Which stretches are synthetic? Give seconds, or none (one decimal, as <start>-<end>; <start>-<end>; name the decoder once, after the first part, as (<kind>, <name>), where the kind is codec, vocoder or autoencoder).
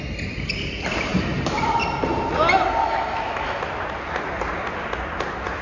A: 2.8-3.6 (autoencoder, DAC-VAE)